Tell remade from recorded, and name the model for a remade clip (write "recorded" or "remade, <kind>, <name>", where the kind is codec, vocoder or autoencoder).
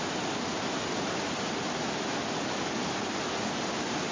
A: recorded